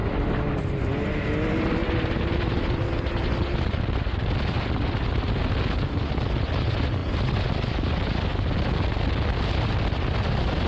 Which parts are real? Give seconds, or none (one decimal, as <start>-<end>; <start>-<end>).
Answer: 0.0-10.7